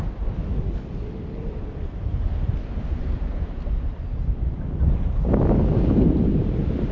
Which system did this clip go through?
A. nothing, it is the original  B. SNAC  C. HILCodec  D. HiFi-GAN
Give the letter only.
A